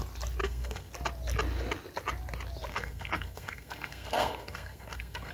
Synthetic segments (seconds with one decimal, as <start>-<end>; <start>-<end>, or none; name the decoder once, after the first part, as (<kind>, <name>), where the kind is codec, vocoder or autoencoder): 0.4-0.9 (codec, SNAC); 2.7-5.3